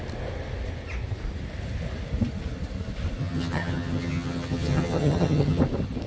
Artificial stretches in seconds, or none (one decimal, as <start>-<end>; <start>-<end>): 3.2-5.6